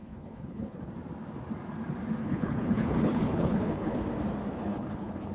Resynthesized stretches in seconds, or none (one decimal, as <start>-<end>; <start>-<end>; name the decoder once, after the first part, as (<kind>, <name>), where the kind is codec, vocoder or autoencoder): 0.0-0.9 (codec, HILCodec); 2.2-4.0; 4.6-5.3